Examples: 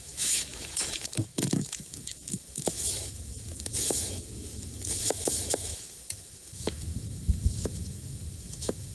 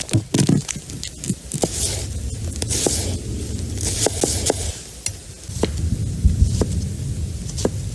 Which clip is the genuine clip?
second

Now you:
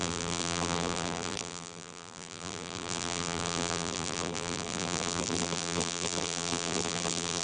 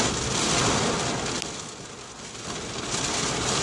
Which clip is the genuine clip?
second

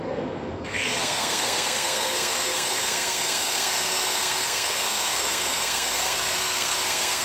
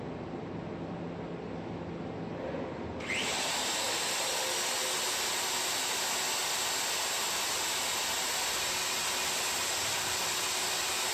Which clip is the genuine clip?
second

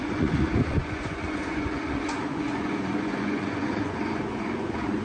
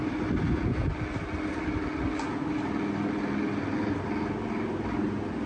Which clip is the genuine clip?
second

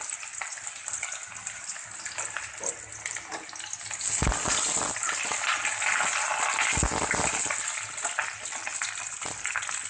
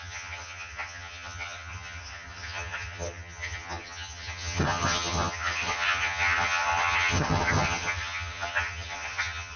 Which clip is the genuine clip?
first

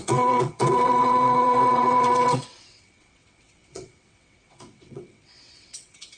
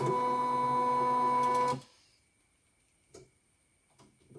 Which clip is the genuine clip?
second